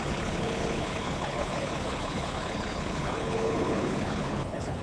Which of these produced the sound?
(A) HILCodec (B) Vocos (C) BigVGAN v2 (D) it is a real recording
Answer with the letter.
A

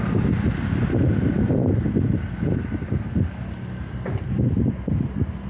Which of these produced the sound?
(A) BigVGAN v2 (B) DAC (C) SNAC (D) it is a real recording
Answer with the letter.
D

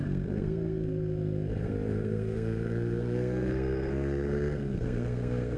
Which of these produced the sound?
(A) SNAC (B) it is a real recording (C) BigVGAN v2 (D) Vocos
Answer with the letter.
A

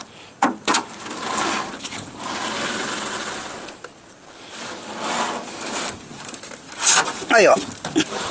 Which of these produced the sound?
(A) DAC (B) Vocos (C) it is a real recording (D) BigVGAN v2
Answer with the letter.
C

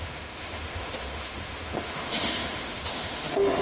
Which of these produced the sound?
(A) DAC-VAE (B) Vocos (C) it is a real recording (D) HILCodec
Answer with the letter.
A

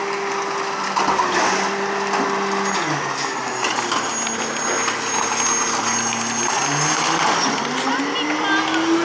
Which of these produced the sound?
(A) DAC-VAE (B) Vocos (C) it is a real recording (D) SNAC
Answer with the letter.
C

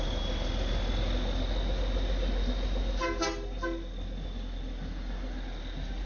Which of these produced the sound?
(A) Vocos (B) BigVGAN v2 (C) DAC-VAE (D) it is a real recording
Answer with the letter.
D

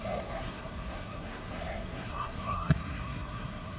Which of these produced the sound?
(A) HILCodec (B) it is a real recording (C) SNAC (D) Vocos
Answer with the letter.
C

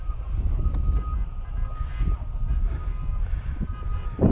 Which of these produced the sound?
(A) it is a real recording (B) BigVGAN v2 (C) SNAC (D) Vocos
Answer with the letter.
A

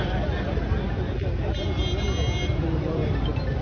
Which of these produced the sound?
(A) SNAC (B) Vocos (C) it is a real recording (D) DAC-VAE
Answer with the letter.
C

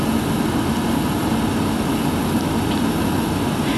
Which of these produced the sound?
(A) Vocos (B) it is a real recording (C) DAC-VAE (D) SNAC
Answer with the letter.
B